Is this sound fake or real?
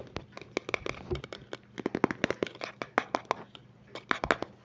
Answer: real